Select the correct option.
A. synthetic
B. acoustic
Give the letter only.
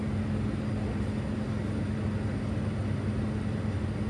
B